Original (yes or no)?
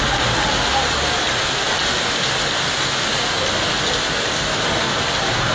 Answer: yes